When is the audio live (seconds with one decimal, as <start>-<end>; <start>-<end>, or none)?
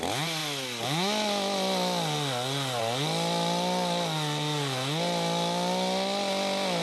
0.0-6.8